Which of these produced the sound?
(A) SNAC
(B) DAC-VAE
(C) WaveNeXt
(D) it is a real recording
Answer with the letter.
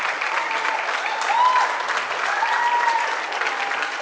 D